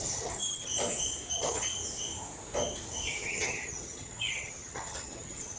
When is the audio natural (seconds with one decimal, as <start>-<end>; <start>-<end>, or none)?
0.7-1.3; 1.8-3.1